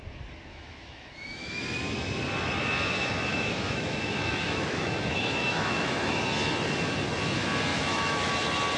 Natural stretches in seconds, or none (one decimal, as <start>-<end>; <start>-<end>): 0.0-0.5; 1.6-3.3; 6.2-7.7; 8.3-8.8